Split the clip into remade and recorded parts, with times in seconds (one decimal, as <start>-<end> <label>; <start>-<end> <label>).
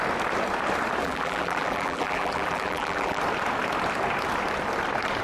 0.0-1.0 recorded; 1.0-3.2 remade; 3.2-5.2 recorded